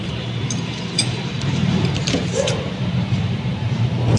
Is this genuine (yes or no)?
no